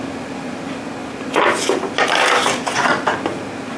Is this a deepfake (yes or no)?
no